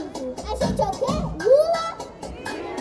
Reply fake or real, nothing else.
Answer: real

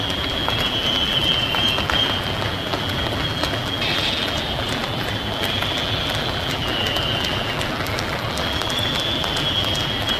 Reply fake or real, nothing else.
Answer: fake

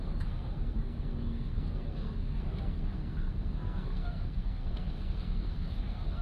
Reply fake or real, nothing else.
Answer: fake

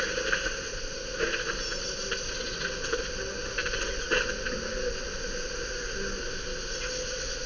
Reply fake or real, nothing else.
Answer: real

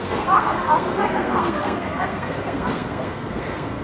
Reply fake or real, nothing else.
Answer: fake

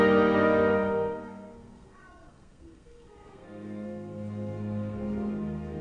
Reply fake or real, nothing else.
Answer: fake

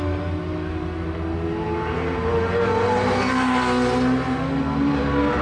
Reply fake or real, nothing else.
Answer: real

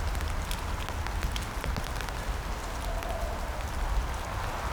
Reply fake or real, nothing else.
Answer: real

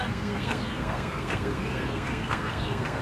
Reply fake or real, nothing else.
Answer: fake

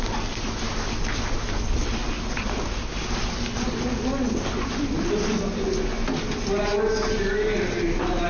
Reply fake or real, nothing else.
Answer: real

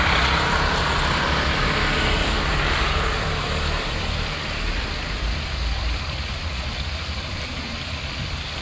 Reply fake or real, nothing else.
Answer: fake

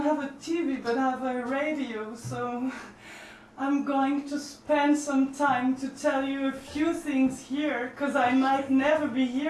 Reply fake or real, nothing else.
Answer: real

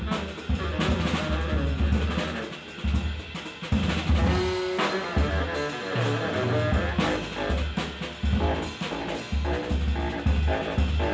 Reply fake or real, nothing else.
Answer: real